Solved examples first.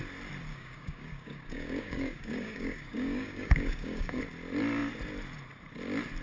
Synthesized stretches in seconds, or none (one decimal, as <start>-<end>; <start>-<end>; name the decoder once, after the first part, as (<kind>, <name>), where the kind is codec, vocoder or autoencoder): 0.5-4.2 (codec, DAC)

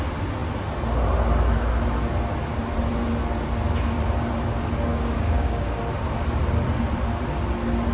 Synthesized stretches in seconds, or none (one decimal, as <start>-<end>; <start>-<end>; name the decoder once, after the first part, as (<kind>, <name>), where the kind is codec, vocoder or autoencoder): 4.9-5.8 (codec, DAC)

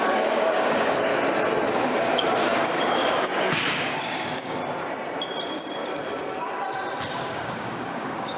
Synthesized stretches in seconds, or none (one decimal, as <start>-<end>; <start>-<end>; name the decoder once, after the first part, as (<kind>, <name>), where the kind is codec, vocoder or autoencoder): 0.0-1.1 (codec, DAC); 1.8-4.6; 7.1-8.4